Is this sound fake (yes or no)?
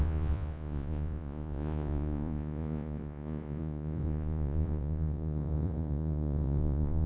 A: yes